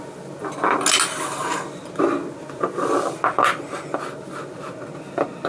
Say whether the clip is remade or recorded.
recorded